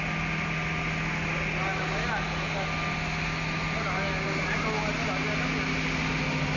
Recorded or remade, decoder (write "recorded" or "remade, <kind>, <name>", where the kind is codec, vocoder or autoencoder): recorded